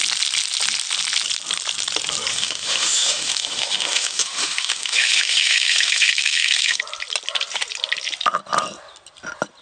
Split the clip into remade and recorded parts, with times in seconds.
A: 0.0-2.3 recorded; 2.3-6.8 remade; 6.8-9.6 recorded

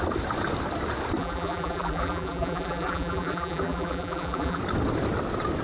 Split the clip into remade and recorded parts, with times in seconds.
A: 0.0-1.2 recorded; 1.2-4.6 remade; 4.6-5.6 recorded

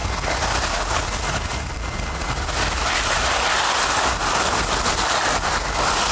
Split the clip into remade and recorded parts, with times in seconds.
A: 0.0-6.1 recorded